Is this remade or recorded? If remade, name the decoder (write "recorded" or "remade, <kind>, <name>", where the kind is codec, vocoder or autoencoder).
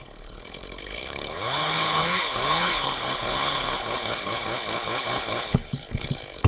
remade, codec, HILCodec